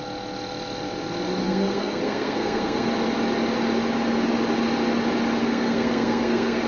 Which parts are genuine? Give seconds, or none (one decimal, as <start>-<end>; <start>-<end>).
0.0-1.4; 2.9-5.4